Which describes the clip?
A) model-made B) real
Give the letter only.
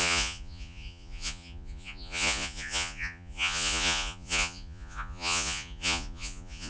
A